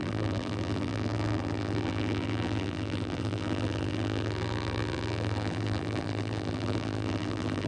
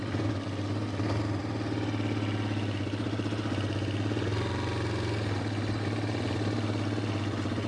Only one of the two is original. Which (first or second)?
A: second